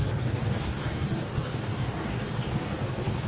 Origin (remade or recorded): remade